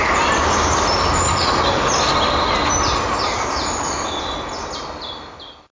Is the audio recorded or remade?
recorded